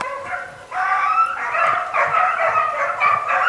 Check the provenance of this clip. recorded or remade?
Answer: remade